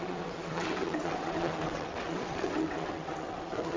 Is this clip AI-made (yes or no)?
yes